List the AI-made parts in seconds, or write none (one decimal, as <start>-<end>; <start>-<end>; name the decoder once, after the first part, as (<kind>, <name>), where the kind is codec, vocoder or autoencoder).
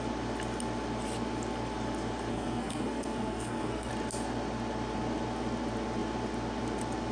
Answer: 2.3-3.9 (codec, SNAC)